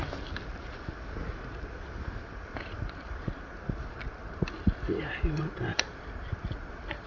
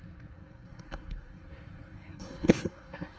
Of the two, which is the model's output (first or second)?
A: second